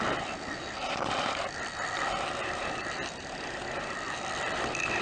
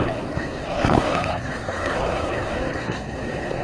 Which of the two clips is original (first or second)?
first